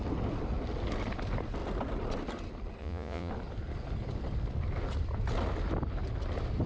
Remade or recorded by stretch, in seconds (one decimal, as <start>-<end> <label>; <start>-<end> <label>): 0.0-2.8 recorded; 2.8-3.3 remade; 3.3-6.7 recorded